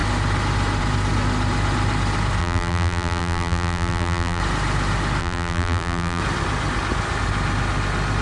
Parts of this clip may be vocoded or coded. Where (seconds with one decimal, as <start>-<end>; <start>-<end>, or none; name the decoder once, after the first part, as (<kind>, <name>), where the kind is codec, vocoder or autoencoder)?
2.4-4.4 (vocoder, BigVGAN v2); 5.2-6.2